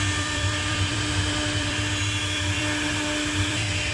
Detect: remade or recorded remade